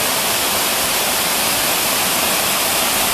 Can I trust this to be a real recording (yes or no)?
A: yes